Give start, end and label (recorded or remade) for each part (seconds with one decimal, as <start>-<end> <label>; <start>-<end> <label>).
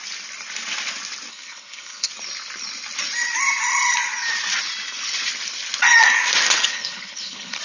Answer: 0.0-1.3 recorded; 1.3-2.1 remade; 2.1-6.7 recorded; 6.7-7.6 remade